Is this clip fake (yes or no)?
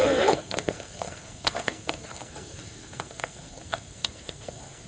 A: yes